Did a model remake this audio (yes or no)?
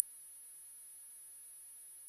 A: no